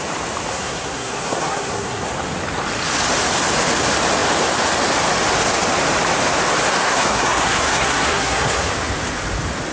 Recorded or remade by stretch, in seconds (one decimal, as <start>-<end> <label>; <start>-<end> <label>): 0.0-0.5 recorded; 0.5-2.1 remade; 2.1-6.8 recorded; 6.8-8.7 remade; 8.7-9.7 recorded

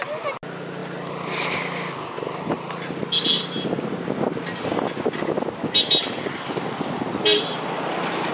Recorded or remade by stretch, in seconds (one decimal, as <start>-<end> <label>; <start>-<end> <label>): 0.0-8.3 recorded

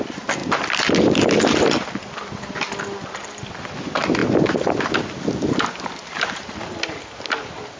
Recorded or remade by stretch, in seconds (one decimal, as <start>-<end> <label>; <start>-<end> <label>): 0.0-6.0 recorded; 6.0-6.5 remade; 6.5-7.8 recorded